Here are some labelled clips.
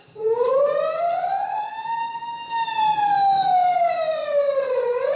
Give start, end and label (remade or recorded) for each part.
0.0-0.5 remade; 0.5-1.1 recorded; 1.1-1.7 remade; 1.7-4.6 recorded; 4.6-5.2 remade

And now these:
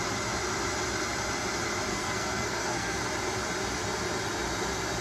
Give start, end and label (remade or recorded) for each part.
0.0-1.9 recorded; 1.9-3.0 remade; 3.0-5.0 recorded

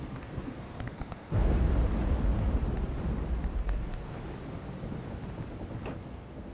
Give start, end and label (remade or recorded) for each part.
0.0-1.7 remade; 1.7-3.6 recorded; 3.6-4.1 remade; 4.1-6.0 recorded; 6.0-6.5 remade

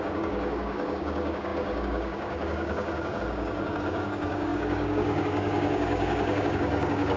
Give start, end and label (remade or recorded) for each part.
0.0-7.2 remade

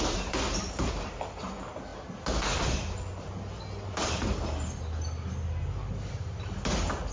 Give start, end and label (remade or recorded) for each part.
0.0-7.1 recorded